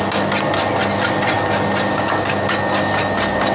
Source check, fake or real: real